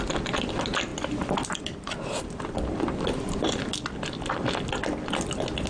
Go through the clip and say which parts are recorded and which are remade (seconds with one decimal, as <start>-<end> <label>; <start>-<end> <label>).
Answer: 0.0-5.7 recorded